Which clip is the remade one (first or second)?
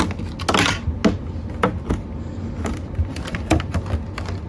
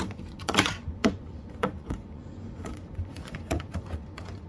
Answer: second